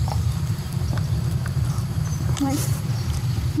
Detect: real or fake fake